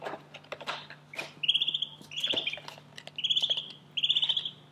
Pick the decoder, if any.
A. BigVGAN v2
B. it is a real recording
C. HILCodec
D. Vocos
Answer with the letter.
B